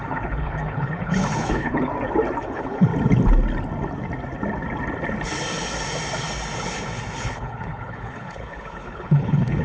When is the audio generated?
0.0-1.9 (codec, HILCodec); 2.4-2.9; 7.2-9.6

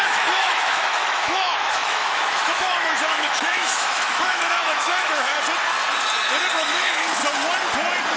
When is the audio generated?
0.0-5.3 (autoencoder, DAC-VAE); 6.5-7.2

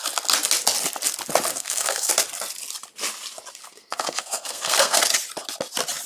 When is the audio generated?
1.5-2.1 (codec, SNAC); 3.6-5.0

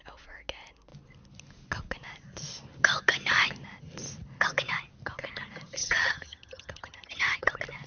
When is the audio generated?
5.8-7.5 (vocoder, HiFi-GAN)

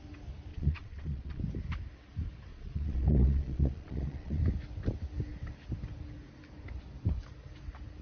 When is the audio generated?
0.5-1.4 (vocoder, Vocos); 2.5-4.4